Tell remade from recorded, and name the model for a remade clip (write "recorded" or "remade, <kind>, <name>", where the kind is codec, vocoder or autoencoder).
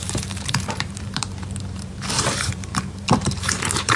remade, vocoder, BigVGAN v2